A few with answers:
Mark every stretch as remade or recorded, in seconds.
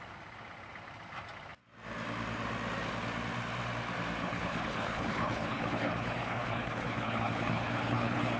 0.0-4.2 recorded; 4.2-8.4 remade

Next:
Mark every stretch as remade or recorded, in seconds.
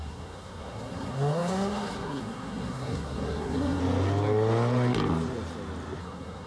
0.0-3.8 remade; 3.8-6.0 recorded; 6.0-6.5 remade